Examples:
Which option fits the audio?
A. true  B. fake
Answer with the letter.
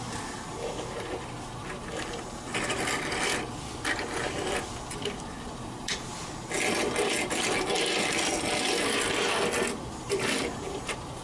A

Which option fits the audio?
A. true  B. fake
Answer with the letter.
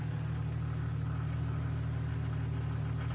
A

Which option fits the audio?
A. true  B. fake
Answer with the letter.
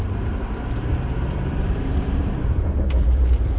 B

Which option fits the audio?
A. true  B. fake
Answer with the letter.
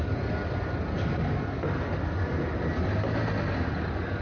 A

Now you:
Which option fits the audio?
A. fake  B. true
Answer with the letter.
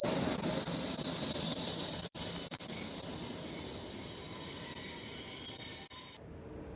B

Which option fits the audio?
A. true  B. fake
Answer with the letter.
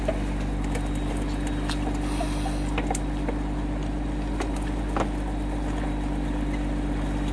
A